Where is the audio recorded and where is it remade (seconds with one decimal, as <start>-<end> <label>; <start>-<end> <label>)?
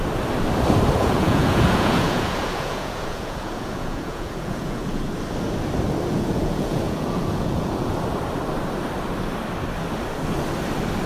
0.0-1.0 recorded; 1.0-5.1 remade; 5.1-6.1 recorded; 6.1-7.9 remade; 7.9-11.1 recorded